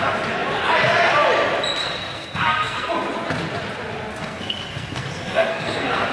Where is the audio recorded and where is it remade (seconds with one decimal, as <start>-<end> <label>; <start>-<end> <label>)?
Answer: 0.0-1.8 recorded; 1.8-2.9 remade; 2.9-4.2 recorded; 4.2-6.1 remade